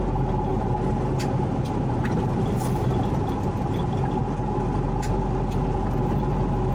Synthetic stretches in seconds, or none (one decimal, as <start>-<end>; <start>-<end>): none

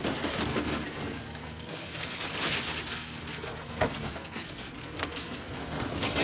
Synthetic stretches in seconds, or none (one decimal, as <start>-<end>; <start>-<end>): 0.5-2.2; 2.9-5.8

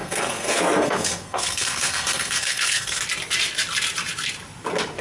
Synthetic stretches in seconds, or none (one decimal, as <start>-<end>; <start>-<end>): 0.0-3.0

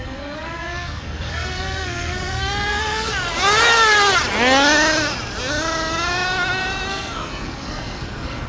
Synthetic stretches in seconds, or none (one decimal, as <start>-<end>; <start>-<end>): 0.0-3.1; 6.9-8.5

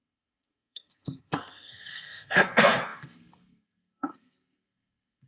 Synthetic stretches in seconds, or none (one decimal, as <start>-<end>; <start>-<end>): 0.0-5.3

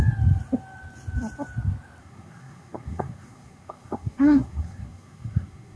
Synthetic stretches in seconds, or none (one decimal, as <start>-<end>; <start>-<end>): 2.0-5.8

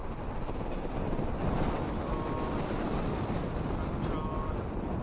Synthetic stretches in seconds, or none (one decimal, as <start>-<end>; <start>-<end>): none

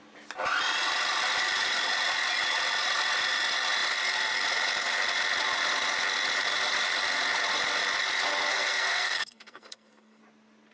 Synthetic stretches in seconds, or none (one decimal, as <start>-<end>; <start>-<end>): 8.5-10.2